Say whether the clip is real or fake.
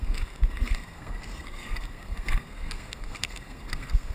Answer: fake